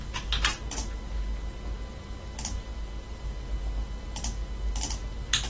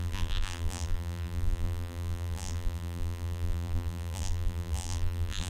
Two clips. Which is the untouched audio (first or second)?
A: first